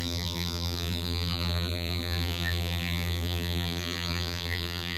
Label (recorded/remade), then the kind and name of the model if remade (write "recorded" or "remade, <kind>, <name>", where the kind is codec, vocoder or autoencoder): remade, vocoder, BigVGAN v2